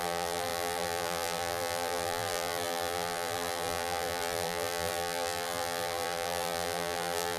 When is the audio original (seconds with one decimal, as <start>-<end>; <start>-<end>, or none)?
none